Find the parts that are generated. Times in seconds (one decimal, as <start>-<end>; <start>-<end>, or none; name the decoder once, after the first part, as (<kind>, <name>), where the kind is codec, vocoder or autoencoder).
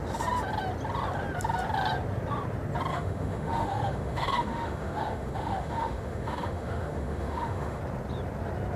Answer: 2.9-7.8 (autoencoder, DAC-VAE)